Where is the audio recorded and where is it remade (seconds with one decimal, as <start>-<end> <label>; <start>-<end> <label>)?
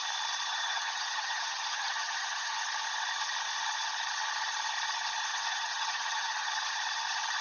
0.0-0.5 recorded; 0.5-2.6 remade; 2.6-5.3 recorded; 5.3-6.5 remade; 6.5-7.4 recorded